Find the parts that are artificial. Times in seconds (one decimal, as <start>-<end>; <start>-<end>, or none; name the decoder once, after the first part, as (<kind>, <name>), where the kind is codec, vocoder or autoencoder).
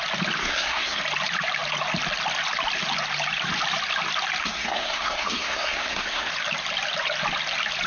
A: 0.4-1.0 (codec, SNAC); 4.4-6.3